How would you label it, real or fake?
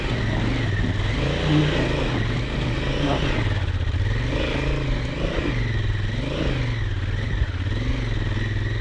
real